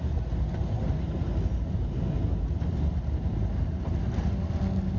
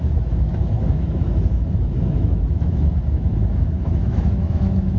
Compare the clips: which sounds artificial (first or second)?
second